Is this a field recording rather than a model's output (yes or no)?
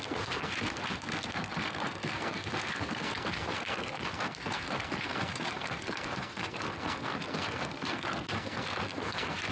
no